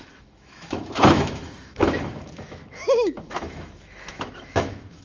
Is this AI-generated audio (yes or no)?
yes